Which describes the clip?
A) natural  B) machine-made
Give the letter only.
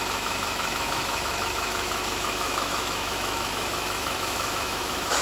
B